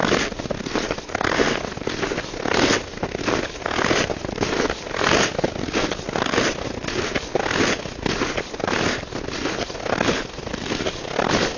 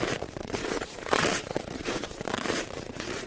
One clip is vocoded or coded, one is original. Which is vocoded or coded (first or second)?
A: second